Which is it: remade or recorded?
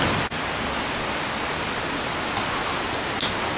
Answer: recorded